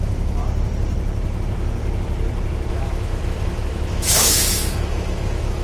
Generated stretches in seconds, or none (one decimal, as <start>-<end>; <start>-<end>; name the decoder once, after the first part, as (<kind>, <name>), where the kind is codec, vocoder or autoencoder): 0.0-0.4 (autoencoder, DAC-VAE); 2.7-5.6